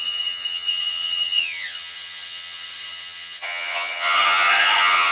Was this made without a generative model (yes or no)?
no